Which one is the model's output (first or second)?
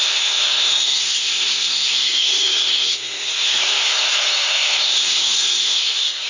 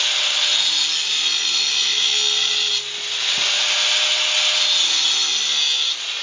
first